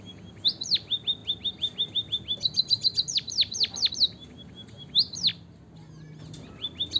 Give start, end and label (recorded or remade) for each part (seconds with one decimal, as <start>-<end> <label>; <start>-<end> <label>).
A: 0.0-7.0 recorded